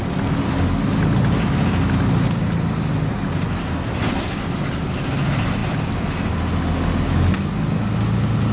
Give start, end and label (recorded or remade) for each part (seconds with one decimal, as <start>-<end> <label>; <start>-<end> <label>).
0.0-8.5 recorded